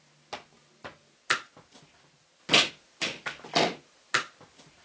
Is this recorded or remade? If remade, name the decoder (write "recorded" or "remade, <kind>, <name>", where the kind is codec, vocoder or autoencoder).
recorded